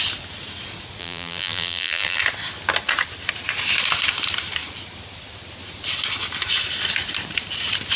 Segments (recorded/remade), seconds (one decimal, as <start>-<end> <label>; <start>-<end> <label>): 0.0-1.0 recorded; 1.0-2.2 remade; 2.2-8.0 recorded

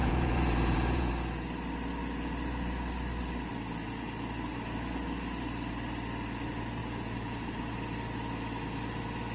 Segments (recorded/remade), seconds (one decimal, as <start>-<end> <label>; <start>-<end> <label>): 0.0-1.1 remade; 1.1-6.8 recorded; 6.8-7.6 remade; 7.6-9.3 recorded

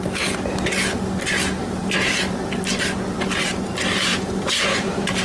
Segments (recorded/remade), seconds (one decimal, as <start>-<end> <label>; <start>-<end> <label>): 0.0-1.6 recorded; 1.6-2.7 remade; 2.7-4.1 recorded; 4.1-5.2 remade